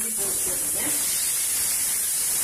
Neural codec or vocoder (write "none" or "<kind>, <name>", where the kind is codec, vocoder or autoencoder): none